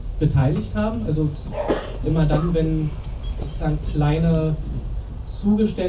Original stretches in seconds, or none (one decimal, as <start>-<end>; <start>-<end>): 0.0-5.9